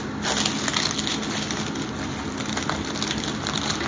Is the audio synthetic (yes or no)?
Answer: no